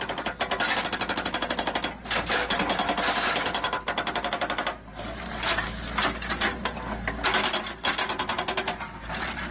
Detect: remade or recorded recorded